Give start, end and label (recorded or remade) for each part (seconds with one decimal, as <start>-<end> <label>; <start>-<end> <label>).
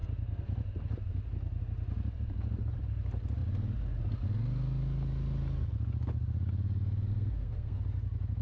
0.0-7.1 recorded; 7.1-7.8 remade; 7.8-8.4 recorded